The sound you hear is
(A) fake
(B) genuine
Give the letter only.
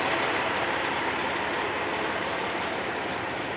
B